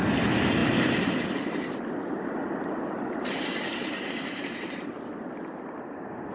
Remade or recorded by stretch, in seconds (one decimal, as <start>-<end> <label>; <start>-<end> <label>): 0.0-6.3 recorded